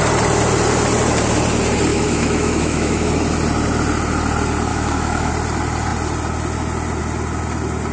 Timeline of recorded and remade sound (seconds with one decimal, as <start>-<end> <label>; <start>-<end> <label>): 0.0-1.9 recorded; 1.9-3.1 remade; 3.1-4.7 recorded; 4.7-5.3 remade; 5.3-7.9 recorded